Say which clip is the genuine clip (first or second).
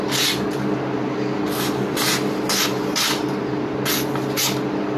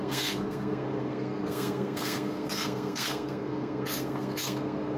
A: first